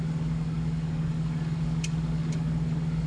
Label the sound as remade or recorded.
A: remade